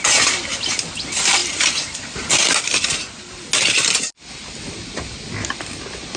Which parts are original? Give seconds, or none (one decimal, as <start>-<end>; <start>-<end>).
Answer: 0.0-6.2